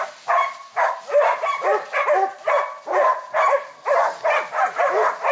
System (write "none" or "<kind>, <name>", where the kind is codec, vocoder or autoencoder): none